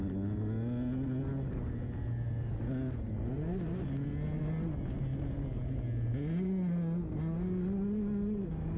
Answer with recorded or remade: recorded